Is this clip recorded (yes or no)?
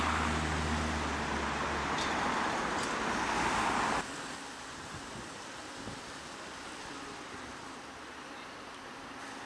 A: yes